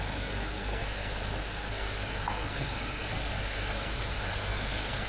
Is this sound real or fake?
fake